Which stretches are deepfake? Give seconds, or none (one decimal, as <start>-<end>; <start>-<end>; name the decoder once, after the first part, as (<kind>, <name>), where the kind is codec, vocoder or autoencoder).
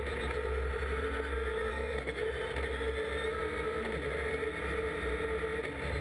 1.7-2.2 (codec, SNAC)